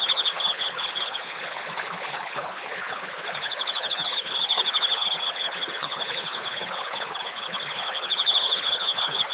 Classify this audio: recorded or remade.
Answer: remade